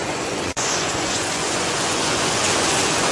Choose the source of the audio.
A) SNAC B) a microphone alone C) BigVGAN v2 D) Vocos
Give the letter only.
D